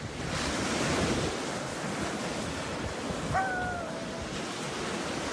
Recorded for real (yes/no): yes